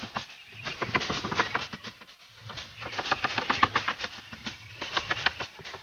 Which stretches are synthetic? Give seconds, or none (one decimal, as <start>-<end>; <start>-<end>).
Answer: 0.0-2.4; 4.4-5.8